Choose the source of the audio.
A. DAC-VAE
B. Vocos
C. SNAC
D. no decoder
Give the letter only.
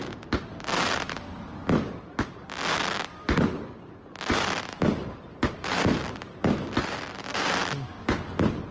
D